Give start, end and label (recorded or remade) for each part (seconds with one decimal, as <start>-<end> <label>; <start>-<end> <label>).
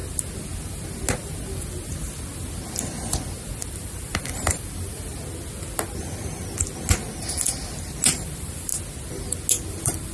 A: 0.0-3.7 recorded; 3.7-5.1 remade; 5.1-8.1 recorded; 8.1-8.7 remade; 8.7-9.7 recorded; 9.7-10.1 remade